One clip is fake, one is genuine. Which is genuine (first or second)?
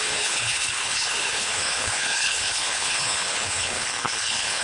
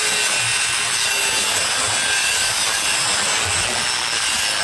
second